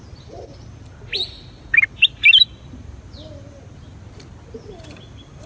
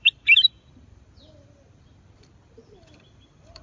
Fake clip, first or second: second